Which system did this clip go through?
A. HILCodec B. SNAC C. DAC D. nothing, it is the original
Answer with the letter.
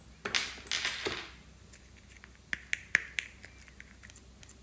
D